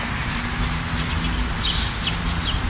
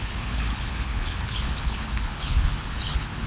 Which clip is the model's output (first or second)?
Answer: second